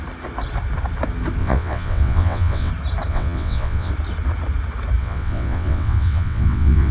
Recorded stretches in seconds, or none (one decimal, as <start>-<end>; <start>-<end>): 0.0-1.4; 2.7-3.1; 3.9-5.0